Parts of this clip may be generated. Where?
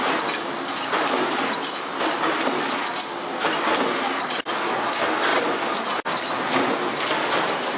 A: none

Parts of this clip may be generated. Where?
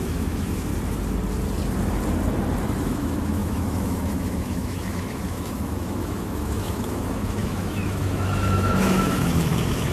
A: 0.0-0.7 (autoencoder, DAC-VAE); 2.8-9.9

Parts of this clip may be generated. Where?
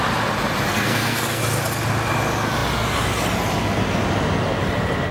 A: 0.7-1.4 (codec, SNAC)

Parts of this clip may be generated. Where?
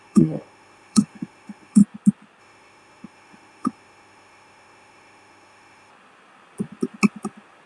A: 0.0-1.8 (autoencoder, DAC-VAE); 2.4-5.9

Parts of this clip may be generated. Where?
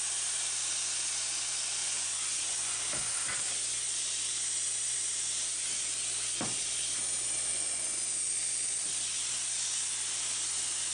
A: 1.8-2.8 (vocoder, Vocos); 7.5-8.1